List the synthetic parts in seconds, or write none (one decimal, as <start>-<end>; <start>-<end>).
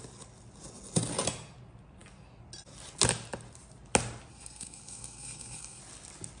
4.3-5.8